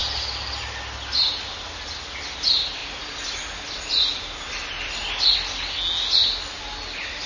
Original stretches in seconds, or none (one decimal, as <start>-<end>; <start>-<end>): 0.0-7.3